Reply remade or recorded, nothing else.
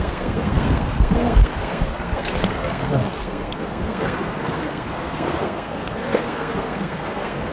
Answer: remade